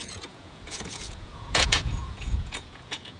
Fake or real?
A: fake